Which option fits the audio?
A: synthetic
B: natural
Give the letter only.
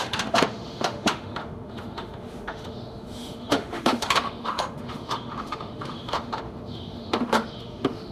A